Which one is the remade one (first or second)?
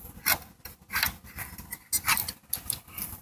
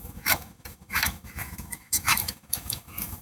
second